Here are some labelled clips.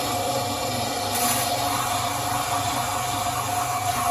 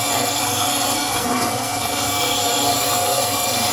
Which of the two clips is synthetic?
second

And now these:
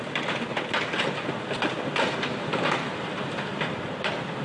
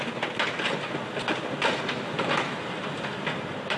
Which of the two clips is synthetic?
first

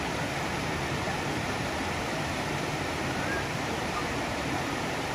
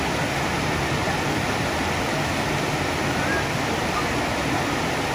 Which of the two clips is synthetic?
first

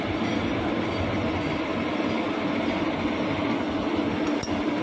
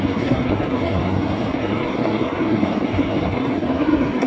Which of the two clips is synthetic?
second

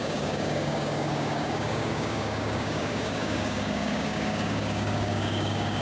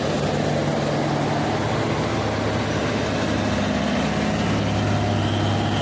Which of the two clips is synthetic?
first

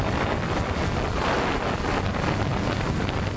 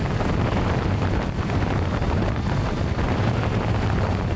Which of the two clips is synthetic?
second